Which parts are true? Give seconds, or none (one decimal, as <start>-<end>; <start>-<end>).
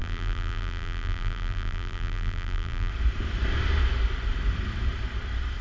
2.9-5.6